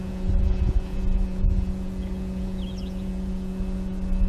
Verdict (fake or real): fake